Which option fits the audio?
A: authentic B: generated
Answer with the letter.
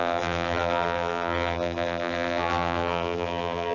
B